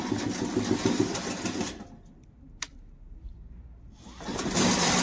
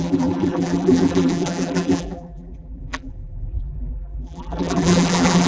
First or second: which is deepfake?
second